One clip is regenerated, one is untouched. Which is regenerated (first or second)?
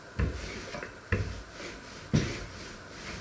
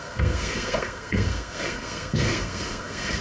second